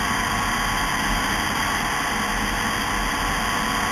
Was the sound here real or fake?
real